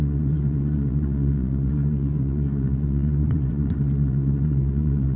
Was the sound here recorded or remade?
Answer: remade